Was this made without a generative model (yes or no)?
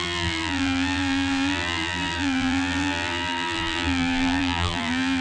no